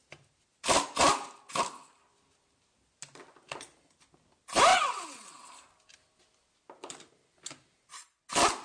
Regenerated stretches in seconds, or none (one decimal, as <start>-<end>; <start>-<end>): 4.7-5.4